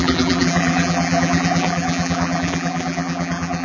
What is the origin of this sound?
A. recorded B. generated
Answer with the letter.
B